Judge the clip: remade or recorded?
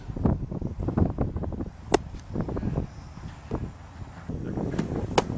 recorded